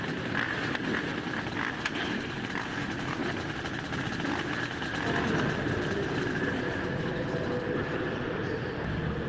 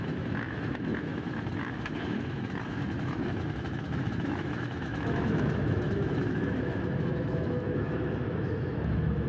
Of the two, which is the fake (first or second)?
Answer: second